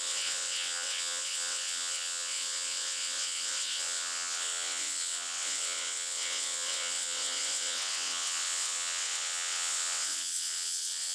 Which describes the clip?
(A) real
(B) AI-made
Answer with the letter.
B